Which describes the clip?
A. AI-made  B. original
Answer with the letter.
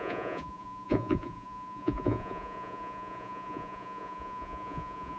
A